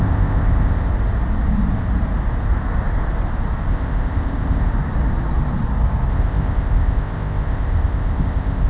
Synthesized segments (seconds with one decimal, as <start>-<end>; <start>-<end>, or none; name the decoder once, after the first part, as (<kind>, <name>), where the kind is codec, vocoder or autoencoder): 0.0-0.9 (codec, ZipCodec); 3.7-4.7; 6.1-8.7